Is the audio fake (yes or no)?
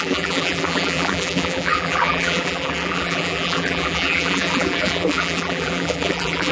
yes